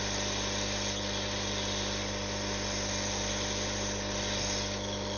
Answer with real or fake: real